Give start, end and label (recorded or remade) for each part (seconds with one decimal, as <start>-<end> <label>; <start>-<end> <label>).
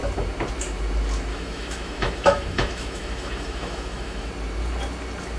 0.0-1.3 recorded; 1.3-4.3 remade; 4.3-5.4 recorded